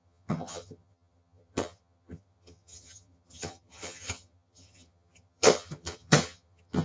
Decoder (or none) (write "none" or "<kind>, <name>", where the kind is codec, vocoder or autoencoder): vocoder, HiFi-GAN